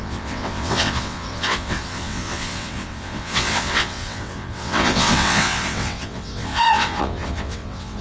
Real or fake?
fake